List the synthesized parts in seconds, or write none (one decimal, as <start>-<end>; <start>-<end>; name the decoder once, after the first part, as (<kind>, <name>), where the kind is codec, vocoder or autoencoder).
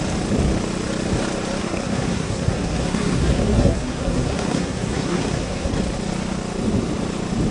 1.6-5.7 (codec, SNAC)